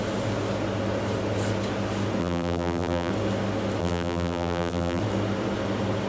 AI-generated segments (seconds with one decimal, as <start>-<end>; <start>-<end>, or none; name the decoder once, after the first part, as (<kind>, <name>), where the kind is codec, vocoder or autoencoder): 2.2-3.1 (vocoder, BigVGAN v2); 3.8-5.0